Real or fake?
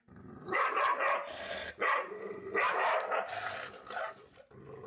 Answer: real